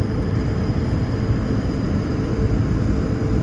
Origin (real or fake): fake